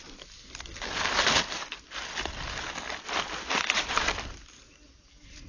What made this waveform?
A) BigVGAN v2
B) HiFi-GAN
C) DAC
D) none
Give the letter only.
D